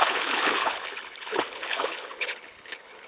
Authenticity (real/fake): fake